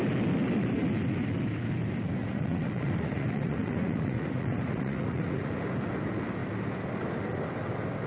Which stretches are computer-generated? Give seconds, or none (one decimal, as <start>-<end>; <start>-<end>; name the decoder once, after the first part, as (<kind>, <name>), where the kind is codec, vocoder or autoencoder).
2.2-5.5 (vocoder, Vocos)